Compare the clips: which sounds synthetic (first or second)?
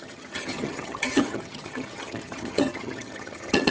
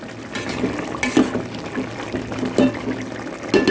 first